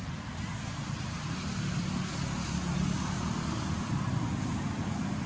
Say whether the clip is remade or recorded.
recorded